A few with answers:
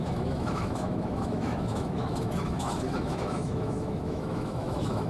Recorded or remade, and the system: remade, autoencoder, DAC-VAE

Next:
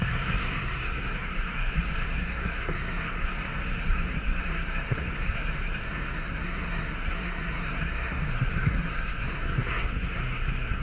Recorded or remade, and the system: remade, codec, SNAC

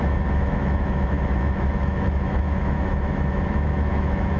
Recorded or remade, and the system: remade, autoencoder, DAC-VAE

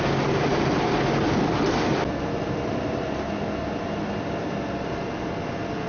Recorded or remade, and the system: recorded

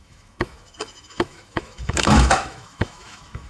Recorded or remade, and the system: remade, autoencoder, DAC-VAE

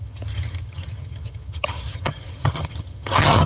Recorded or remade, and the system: remade, vocoder, HiFi-GAN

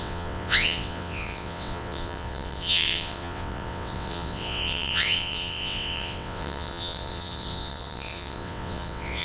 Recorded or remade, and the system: remade, vocoder, WaveNeXt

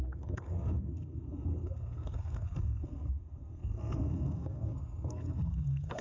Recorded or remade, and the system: remade, codec, SNAC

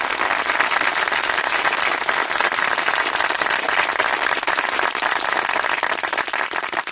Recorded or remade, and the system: recorded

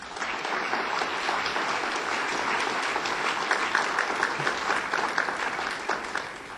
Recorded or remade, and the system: recorded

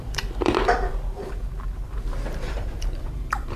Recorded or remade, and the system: remade, vocoder, BigVGAN v2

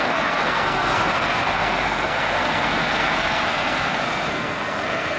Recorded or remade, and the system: remade, codec, SNAC